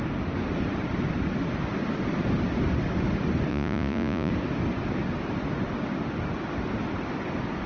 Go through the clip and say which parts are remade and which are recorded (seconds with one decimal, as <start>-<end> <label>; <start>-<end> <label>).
0.0-3.5 recorded; 3.5-4.3 remade; 4.3-7.7 recorded